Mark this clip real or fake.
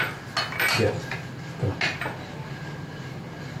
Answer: real